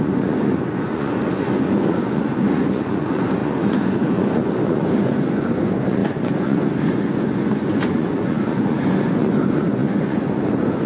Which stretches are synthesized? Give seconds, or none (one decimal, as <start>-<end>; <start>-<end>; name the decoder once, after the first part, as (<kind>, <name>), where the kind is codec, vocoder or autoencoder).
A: 0.0-10.9 (vocoder, Vocos)